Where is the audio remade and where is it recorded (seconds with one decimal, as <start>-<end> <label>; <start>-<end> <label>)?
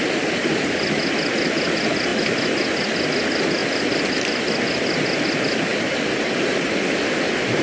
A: 0.0-7.6 recorded